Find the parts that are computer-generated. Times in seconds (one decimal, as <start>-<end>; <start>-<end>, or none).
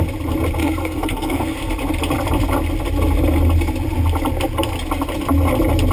0.6-1.7